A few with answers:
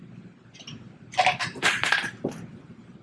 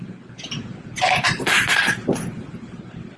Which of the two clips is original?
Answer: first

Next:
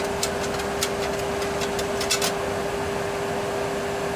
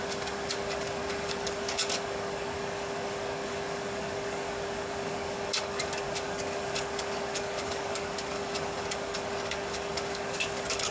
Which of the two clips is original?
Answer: first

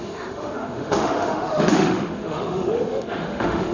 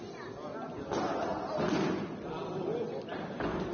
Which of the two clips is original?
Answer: second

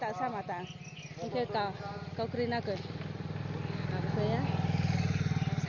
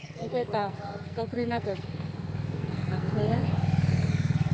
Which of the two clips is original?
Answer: first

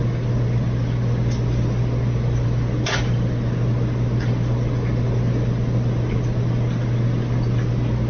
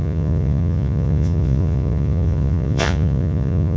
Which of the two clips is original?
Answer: first